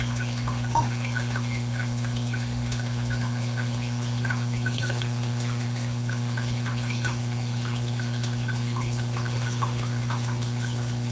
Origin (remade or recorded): remade